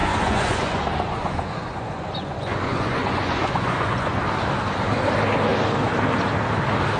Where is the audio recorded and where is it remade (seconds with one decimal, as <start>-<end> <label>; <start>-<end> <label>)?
0.0-4.2 remade; 4.2-7.0 recorded